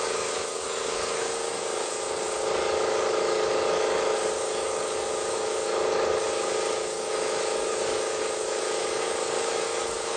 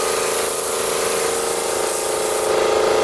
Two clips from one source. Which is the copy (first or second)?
first